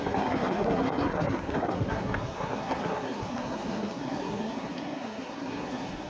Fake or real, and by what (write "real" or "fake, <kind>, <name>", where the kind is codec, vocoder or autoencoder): fake, codec, SNAC